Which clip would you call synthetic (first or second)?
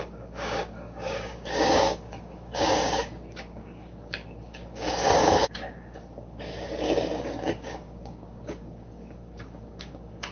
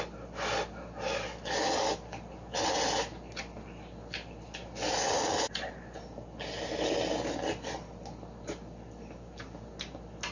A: first